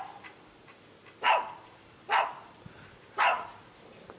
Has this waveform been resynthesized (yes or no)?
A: no